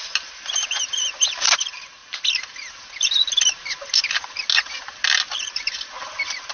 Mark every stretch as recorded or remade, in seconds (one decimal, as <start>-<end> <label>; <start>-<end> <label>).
0.0-6.5 recorded